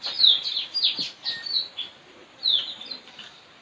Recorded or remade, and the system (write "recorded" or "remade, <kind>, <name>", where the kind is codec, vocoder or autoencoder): recorded